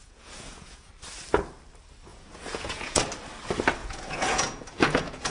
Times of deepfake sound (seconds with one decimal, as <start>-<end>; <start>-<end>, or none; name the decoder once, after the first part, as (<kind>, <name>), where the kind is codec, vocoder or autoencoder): 0.0-0.9 (vocoder, Vocos); 2.1-3.0; 3.8-5.3